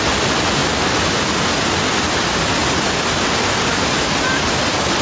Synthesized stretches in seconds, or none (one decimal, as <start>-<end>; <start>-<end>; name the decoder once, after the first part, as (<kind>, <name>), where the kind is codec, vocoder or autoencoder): none